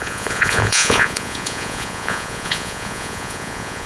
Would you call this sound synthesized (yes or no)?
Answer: yes